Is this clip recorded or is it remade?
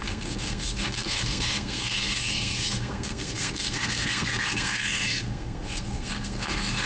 remade